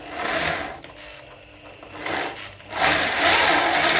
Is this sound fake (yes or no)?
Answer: no